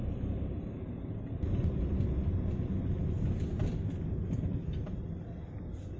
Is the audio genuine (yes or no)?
yes